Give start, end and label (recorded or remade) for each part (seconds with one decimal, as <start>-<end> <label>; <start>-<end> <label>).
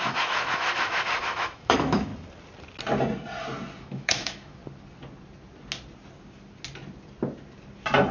0.0-2.1 remade; 2.1-3.8 recorded; 3.8-4.6 remade; 4.6-8.1 recorded